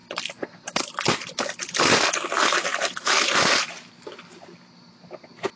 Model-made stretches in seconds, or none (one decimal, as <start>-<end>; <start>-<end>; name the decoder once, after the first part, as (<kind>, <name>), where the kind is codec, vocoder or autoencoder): 0.0-1.3 (vocoder, BigVGAN v2); 2.7-3.9